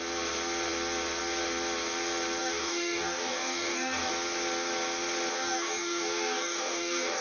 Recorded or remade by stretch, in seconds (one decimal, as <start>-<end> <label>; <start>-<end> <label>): 0.0-2.4 recorded; 2.4-4.1 remade; 4.1-5.3 recorded; 5.3-7.2 remade